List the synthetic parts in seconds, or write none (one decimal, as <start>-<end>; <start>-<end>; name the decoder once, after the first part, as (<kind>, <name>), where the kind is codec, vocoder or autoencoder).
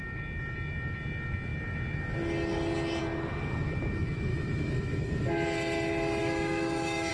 4.3-5.2 (autoencoder, DAC-VAE); 6.2-7.1